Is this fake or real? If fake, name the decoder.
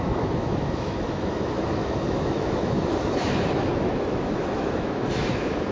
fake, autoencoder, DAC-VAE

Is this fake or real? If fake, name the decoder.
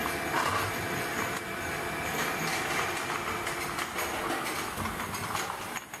real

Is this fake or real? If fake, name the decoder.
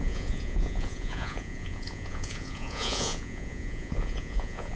fake, vocoder, Vocos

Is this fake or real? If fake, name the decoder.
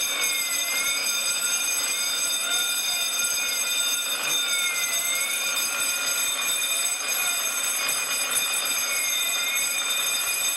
fake, vocoder, BigVGAN v2